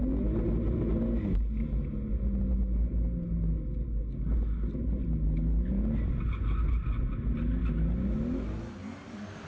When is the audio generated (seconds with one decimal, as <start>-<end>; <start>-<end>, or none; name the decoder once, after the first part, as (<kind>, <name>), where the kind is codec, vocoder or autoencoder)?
none